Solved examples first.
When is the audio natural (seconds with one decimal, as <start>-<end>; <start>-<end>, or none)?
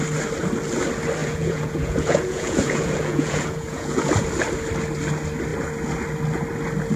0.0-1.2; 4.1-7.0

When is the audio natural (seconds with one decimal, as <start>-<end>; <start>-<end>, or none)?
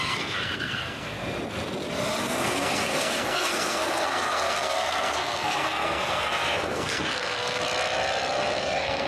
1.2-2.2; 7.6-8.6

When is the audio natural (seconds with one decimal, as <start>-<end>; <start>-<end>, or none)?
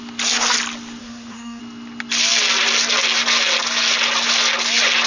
0.0-1.0; 1.6-5.1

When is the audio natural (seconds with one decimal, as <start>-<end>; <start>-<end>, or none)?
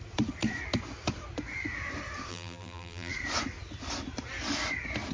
0.0-2.3; 3.1-5.1